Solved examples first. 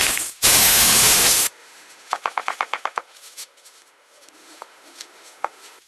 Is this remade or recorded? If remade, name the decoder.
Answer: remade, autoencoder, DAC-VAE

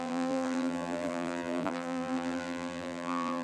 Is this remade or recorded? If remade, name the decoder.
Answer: remade, vocoder, BigVGAN v2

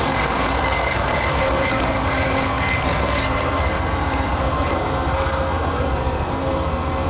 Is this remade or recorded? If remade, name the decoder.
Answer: remade, codec, SNAC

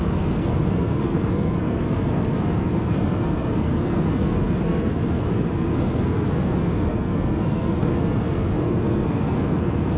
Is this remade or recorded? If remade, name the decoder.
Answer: remade, codec, SNAC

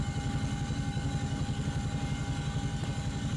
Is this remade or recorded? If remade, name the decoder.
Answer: remade, codec, DAC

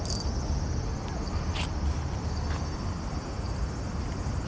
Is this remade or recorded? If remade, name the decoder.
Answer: recorded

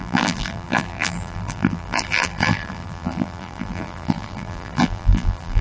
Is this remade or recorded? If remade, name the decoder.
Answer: remade, vocoder, BigVGAN v2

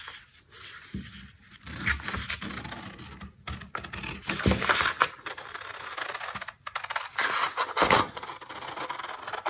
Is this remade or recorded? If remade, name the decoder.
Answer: recorded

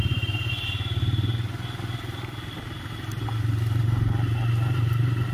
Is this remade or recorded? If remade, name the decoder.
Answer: recorded